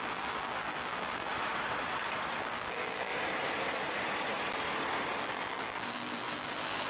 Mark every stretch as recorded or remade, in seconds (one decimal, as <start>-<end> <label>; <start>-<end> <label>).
0.0-1.3 remade; 1.3-2.4 recorded; 2.4-3.1 remade; 3.1-5.2 recorded; 5.2-6.9 remade